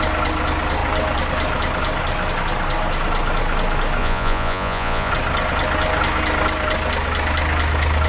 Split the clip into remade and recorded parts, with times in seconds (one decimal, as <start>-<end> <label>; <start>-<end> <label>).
0.0-4.0 recorded; 4.0-5.1 remade; 5.1-8.1 recorded